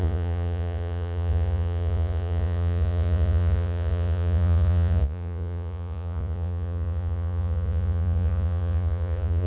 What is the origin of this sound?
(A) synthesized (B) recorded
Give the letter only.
A